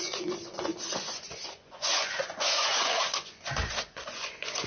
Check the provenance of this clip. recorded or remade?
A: remade